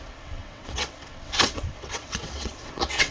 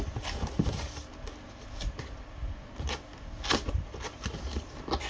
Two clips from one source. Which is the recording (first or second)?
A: second